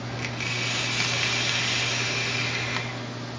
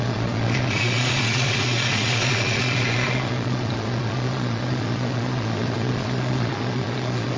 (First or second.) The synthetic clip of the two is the second